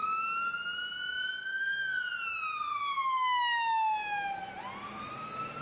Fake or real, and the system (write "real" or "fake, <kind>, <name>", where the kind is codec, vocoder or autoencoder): real